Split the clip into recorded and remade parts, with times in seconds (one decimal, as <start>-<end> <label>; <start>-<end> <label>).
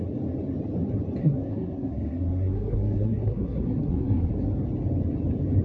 0.0-1.2 recorded; 1.2-4.3 remade; 4.3-5.6 recorded